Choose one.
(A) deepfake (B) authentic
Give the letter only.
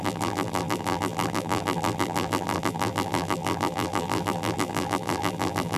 A